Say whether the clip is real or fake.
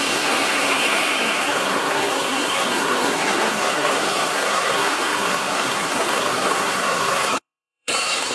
fake